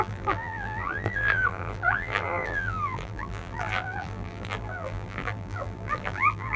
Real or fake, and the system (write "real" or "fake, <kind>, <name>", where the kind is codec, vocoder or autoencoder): fake, vocoder, BigVGAN v2